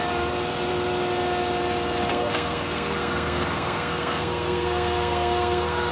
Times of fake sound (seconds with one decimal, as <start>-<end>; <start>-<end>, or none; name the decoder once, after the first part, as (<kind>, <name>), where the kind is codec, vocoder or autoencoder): 2.1-5.9 (codec, SNAC)